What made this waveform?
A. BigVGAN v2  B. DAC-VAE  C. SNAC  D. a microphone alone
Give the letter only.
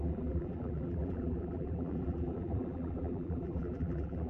A